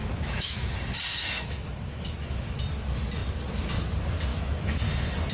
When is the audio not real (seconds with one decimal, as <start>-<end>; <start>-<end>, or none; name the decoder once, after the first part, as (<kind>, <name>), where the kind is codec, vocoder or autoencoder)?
0.0-0.7 (autoencoder, DAC-VAE); 1.1-2.6; 4.3-4.8

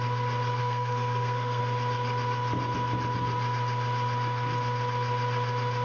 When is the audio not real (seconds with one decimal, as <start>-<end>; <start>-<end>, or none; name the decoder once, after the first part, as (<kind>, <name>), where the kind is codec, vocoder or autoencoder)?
0.6-1.6 (codec, SNAC)

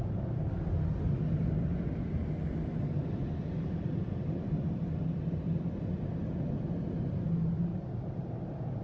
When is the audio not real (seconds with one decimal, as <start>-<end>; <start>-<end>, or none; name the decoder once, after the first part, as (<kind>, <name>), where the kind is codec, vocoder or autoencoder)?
none

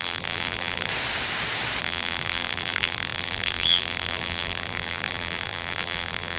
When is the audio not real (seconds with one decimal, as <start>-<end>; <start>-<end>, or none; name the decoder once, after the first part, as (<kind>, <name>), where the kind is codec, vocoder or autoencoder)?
0.0-0.9 (vocoder, BigVGAN v2); 1.8-6.4

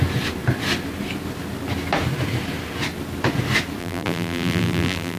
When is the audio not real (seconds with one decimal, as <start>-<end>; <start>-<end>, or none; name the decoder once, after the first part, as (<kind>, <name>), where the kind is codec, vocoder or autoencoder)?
3.8-5.2 (vocoder, BigVGAN v2)

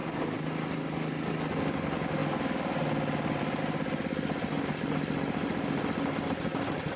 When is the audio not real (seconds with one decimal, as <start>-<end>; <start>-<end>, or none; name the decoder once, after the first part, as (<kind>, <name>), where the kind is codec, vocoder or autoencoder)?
none

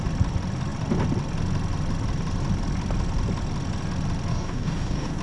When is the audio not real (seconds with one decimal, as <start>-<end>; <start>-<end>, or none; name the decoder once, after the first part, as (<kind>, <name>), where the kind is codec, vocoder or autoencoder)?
4.3-5.2 (codec, DAC)

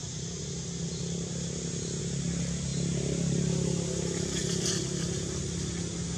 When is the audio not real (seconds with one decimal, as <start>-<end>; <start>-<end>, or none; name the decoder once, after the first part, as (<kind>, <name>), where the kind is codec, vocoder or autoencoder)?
4.4-5.4 (vocoder, BigVGAN v2)